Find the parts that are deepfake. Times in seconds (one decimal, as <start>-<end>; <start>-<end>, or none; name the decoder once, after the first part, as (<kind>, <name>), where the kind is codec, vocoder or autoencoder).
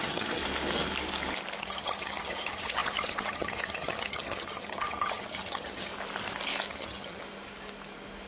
0.0-0.4 (vocoder, HiFi-GAN); 1.6-5.9; 6.7-7.2